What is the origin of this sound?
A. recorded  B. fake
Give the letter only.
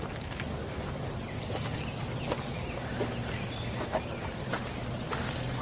A